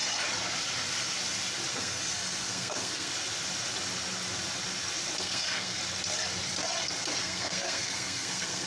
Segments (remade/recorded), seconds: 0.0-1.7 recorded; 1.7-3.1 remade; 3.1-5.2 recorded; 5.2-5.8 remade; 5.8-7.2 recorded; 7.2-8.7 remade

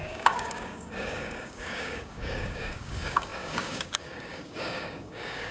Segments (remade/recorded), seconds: 0.0-5.5 remade

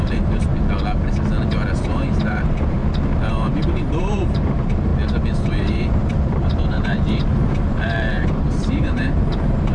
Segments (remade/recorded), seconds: 0.0-0.5 remade; 0.5-1.8 recorded; 1.8-2.8 remade; 2.8-3.3 recorded; 3.3-4.9 remade; 4.9-5.5 recorded; 5.5-9.7 remade

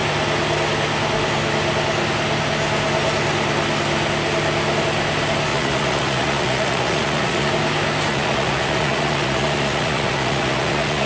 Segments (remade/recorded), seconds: 0.0-5.5 recorded; 5.5-7.5 remade; 7.5-8.1 recorded; 8.1-11.1 remade

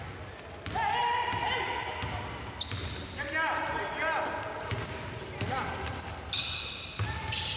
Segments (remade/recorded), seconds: 0.0-7.6 recorded

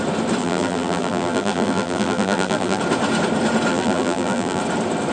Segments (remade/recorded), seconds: 0.0-0.4 recorded; 0.4-2.8 remade; 2.8-3.7 recorded; 3.7-4.6 remade; 4.6-5.1 recorded